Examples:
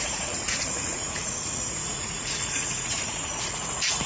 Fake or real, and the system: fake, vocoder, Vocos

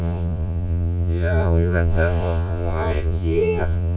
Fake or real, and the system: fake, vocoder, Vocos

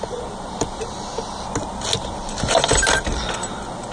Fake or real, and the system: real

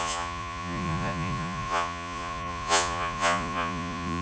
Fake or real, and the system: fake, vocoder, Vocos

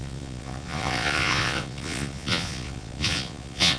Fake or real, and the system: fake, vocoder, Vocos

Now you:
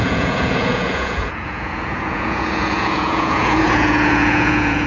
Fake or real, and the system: fake, vocoder, Vocos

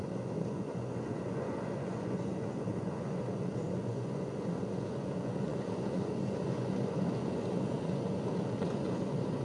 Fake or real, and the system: fake, vocoder, Vocos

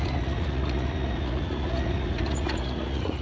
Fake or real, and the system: fake, vocoder, Vocos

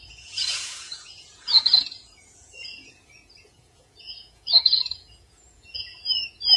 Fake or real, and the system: fake, vocoder, Vocos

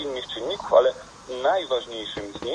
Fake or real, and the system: real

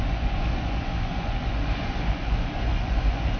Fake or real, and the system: fake, vocoder, Vocos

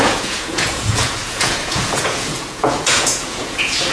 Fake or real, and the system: fake, vocoder, Vocos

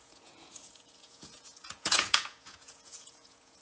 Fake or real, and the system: fake, vocoder, Vocos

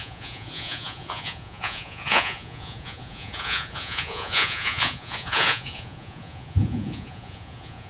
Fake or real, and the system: fake, vocoder, Vocos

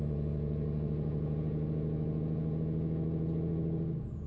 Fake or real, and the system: fake, vocoder, Vocos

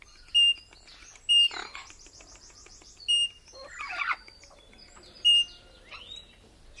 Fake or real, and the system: real